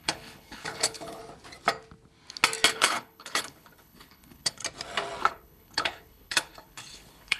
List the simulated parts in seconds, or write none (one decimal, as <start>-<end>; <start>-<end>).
0.0-1.2; 2.7-4.6; 5.2-7.4